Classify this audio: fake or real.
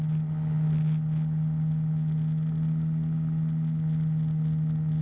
real